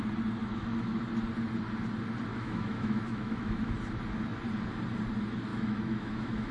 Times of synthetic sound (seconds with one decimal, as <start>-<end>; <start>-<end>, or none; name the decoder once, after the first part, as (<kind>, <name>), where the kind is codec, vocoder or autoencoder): 0.4-1.0 (autoencoder, DAC-VAE); 2.3-3.7; 5.5-6.5